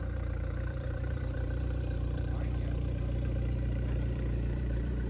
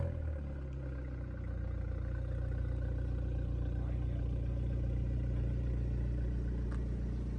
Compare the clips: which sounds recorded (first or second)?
second